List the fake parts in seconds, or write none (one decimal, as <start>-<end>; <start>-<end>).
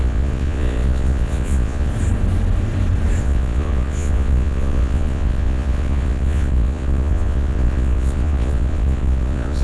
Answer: 0.0-1.9; 3.2-9.6